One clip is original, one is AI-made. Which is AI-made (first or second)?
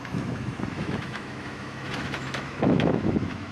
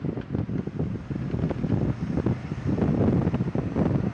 first